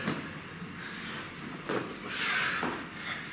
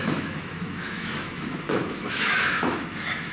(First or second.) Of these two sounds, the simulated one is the second